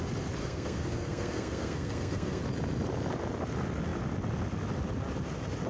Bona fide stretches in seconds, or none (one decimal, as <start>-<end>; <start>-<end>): 0.0-0.4; 2.4-5.7